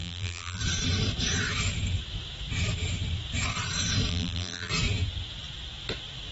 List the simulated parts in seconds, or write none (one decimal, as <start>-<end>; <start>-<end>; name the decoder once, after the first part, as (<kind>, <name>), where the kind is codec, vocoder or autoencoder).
0.0-0.6 (vocoder, BigVGAN v2); 4.1-4.7